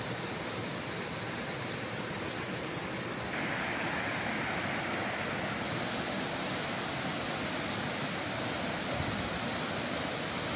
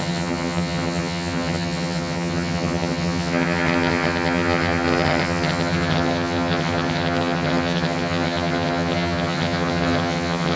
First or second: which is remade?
second